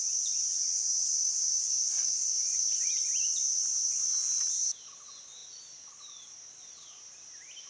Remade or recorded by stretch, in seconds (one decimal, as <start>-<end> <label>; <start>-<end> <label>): 0.0-2.0 recorded; 2.0-3.1 remade; 3.1-7.7 recorded